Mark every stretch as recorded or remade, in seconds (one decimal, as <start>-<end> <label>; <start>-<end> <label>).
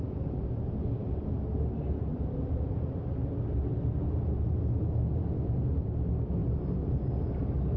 0.0-7.8 recorded